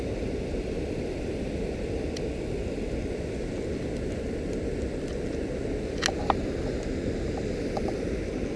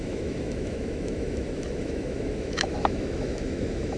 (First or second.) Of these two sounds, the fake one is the second